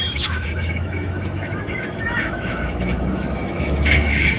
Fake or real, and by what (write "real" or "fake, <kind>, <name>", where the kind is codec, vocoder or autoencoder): fake, autoencoder, DAC-VAE